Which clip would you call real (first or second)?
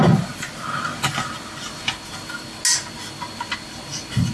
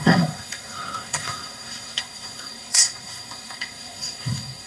first